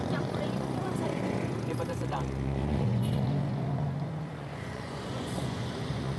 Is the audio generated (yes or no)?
yes